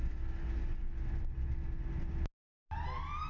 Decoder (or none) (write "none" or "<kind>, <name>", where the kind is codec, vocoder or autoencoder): none